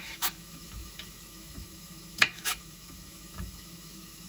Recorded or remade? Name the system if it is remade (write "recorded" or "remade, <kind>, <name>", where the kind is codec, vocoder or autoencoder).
remade, autoencoder, DAC-VAE